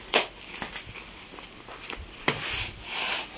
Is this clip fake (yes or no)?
no